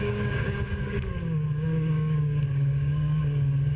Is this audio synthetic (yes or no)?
yes